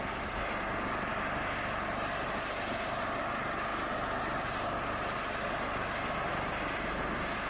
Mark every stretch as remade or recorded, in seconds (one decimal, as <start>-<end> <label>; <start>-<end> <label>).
0.0-7.5 recorded